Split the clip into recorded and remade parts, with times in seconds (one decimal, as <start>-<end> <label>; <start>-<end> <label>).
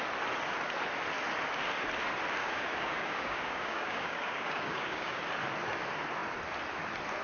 0.0-2.4 recorded; 2.4-5.2 remade; 5.2-7.2 recorded